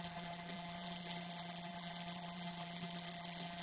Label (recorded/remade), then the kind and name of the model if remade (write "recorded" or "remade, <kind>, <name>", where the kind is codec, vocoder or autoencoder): remade, vocoder, BigVGAN v2